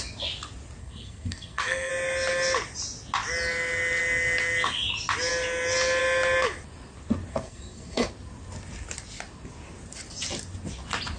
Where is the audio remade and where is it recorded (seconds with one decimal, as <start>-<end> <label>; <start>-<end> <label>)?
0.0-0.8 recorded; 0.8-1.9 remade; 1.9-7.3 recorded; 7.3-8.1 remade; 8.1-11.2 recorded